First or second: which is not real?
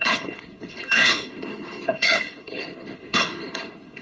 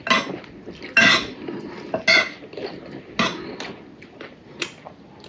first